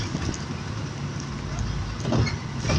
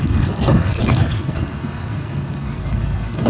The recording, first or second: first